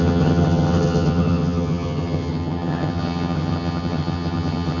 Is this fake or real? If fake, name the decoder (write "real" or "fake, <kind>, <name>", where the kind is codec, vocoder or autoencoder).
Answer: fake, vocoder, HiFi-GAN